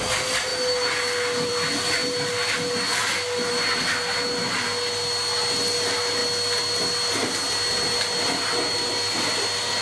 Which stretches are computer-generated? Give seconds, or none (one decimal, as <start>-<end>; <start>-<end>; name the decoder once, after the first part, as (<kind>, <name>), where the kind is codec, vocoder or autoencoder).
none